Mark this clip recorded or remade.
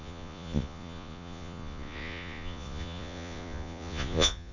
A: remade